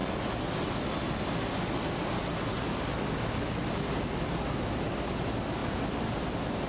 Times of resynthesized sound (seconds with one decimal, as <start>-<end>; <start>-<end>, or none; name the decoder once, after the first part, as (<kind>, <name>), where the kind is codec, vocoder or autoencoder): none